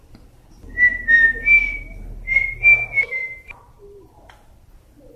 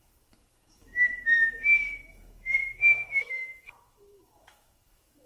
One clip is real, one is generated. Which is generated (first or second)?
second